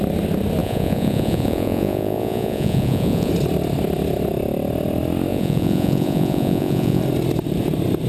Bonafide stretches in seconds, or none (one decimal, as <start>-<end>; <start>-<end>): 0.0-0.6; 3.3-5.3; 7.0-8.1